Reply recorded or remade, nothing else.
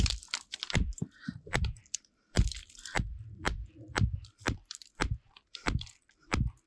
remade